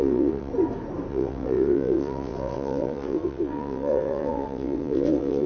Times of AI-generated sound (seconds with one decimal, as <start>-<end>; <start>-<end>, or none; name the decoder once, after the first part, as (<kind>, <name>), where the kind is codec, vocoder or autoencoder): 0.0-0.5 (vocoder, WaveNeXt); 1.1-5.5